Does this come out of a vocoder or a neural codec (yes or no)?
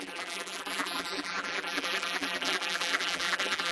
yes